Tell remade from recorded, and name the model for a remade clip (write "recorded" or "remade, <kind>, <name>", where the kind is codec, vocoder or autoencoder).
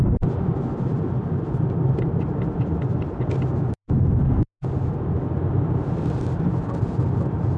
recorded